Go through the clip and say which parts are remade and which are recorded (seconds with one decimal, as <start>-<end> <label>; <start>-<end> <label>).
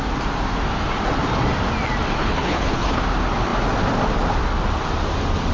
0.0-2.2 recorded; 2.2-3.0 remade; 3.0-5.5 recorded